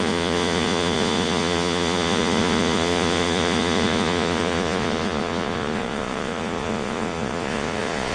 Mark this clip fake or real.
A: fake